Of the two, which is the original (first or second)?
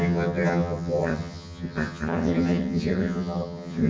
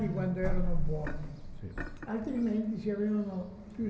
second